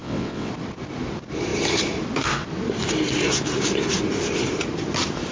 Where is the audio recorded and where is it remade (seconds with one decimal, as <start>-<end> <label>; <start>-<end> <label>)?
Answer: 0.0-0.5 remade; 0.5-5.3 recorded